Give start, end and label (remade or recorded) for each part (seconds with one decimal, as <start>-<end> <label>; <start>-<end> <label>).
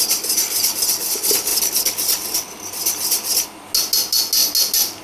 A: 0.0-5.0 recorded